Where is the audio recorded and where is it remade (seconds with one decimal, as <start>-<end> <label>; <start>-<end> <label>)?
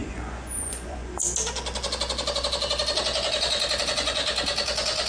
0.0-1.2 remade; 1.2-3.8 recorded; 3.8-4.2 remade; 4.2-5.1 recorded